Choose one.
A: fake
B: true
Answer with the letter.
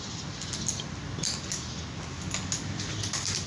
B